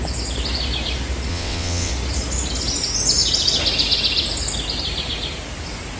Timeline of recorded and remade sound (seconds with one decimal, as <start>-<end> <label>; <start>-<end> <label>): 0.0-1.3 recorded; 1.3-1.9 remade; 1.9-6.0 recorded